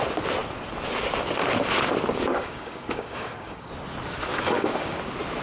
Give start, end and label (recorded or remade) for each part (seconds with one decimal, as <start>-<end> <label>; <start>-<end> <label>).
0.0-2.3 recorded; 2.3-3.7 remade; 3.7-4.3 recorded; 4.3-5.0 remade; 5.0-5.4 recorded